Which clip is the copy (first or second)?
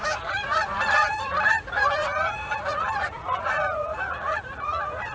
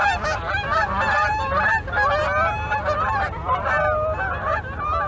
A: first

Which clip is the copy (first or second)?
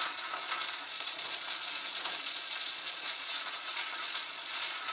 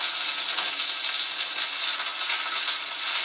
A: first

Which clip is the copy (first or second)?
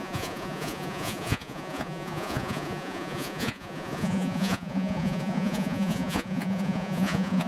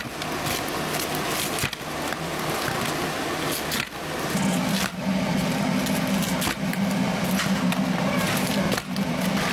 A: first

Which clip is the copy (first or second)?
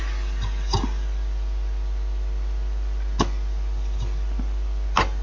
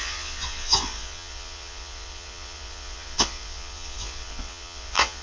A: second